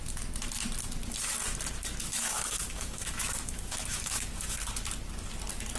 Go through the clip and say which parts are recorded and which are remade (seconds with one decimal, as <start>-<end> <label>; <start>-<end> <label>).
0.0-2.0 recorded; 2.0-4.7 remade; 4.7-5.8 recorded